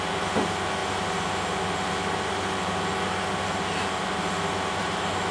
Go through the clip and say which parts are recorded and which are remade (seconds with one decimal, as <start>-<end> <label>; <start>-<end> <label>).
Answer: 0.0-5.3 recorded